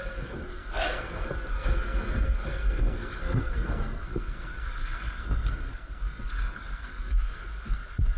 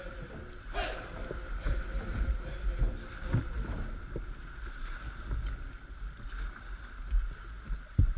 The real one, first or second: second